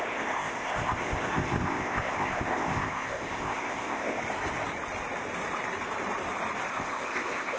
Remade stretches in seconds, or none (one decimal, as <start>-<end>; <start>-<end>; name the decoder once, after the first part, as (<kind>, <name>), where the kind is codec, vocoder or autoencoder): 0.0-4.2 (codec, ZipCodec); 6.7-7.6